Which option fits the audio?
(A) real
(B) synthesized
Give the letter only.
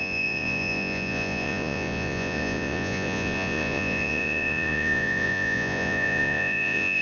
B